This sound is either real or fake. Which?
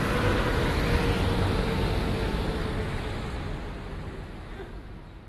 real